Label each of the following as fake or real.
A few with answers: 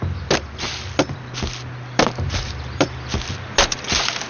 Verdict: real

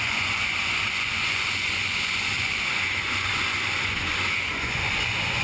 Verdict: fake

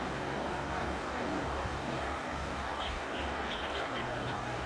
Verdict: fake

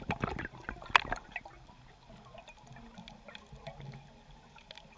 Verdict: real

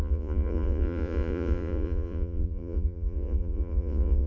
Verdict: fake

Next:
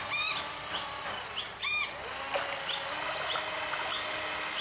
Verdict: real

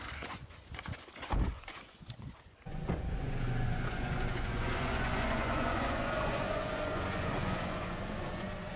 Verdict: fake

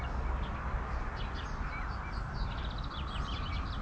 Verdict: real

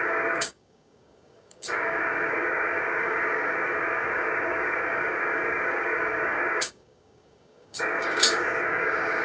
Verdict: fake